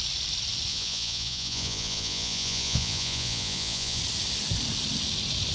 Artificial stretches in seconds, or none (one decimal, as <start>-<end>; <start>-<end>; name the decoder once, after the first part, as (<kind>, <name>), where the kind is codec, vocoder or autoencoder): 0.7-4.0 (vocoder, Vocos)